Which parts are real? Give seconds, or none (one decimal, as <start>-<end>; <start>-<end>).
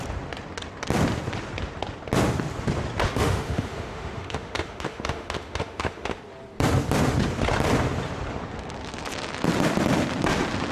0.0-3.1; 6.2-10.7